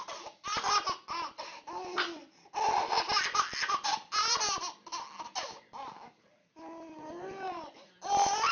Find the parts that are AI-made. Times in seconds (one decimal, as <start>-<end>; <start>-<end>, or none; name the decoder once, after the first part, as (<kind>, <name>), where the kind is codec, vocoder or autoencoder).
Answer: none